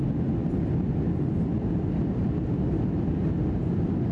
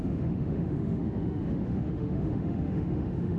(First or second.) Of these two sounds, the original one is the first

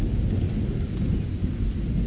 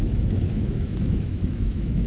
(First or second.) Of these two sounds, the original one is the first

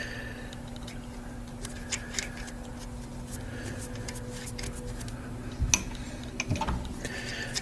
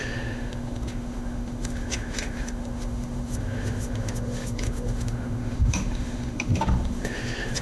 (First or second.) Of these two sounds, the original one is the first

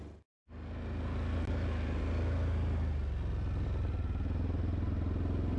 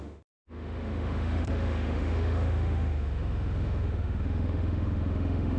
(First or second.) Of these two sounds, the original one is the first